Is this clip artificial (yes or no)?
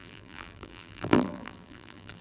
yes